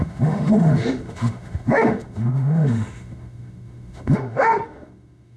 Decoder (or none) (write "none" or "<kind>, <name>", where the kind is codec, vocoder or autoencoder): autoencoder, DAC-VAE